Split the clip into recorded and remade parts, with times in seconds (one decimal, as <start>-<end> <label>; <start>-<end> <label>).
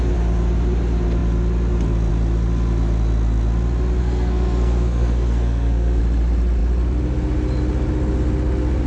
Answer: 0.0-4.0 recorded; 4.0-6.0 remade; 6.0-8.9 recorded